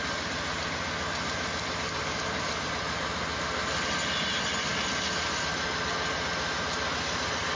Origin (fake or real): real